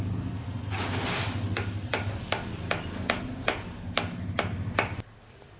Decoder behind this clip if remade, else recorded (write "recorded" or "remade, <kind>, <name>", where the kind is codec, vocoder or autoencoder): recorded